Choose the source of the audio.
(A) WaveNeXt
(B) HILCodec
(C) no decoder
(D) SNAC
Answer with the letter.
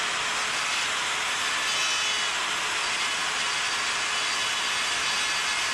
C